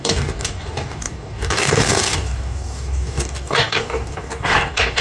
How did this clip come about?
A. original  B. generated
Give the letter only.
B